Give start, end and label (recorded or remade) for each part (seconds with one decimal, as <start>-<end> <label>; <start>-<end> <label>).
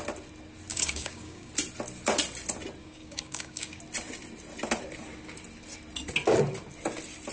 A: 0.0-0.7 recorded; 0.7-1.5 remade; 1.5-2.8 recorded; 2.8-3.8 remade; 3.8-7.3 recorded